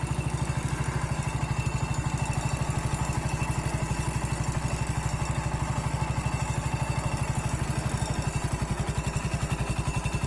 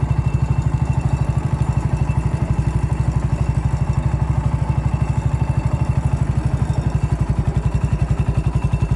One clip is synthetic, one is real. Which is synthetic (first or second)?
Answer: second